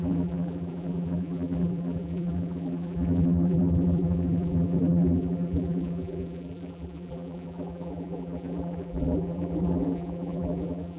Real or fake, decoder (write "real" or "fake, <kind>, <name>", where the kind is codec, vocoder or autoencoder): fake, vocoder, BigVGAN v2